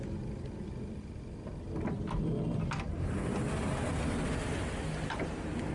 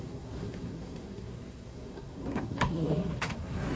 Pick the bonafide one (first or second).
first